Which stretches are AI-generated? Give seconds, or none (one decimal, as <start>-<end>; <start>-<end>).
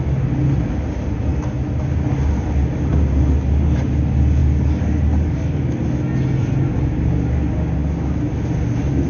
4.4-5.8